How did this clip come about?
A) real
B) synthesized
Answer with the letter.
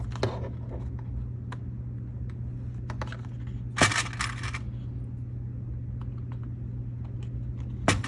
A